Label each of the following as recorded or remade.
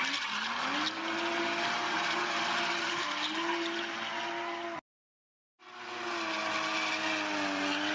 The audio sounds recorded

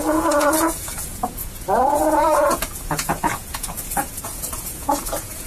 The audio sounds remade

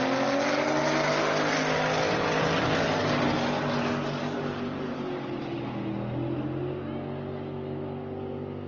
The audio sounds recorded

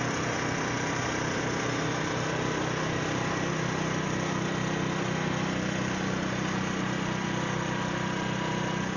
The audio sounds recorded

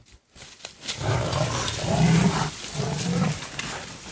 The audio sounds recorded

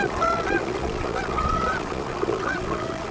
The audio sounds remade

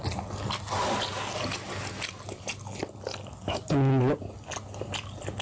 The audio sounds recorded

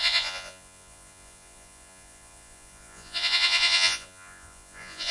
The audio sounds remade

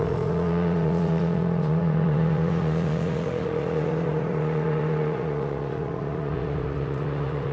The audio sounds remade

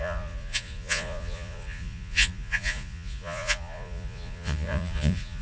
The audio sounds remade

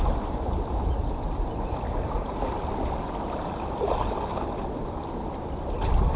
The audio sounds recorded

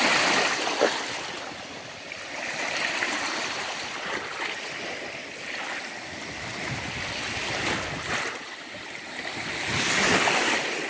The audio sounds recorded